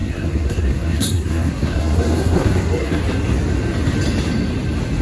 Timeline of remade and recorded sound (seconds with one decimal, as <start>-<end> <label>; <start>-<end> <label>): 0.0-3.0 remade; 3.0-5.0 recorded